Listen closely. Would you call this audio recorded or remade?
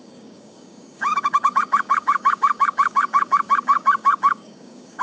remade